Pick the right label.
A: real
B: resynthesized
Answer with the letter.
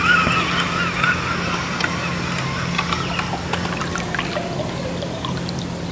A